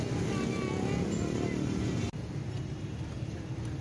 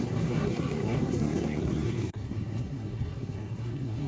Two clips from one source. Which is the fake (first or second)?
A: second